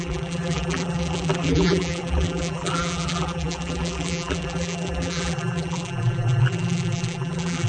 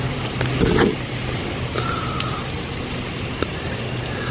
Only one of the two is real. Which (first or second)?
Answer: second